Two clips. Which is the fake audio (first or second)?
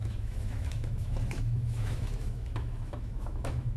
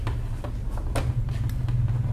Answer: first